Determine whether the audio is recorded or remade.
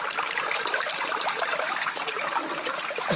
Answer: recorded